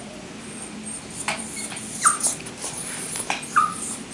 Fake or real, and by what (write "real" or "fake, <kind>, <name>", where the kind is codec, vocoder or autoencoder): fake, vocoder, BigVGAN v2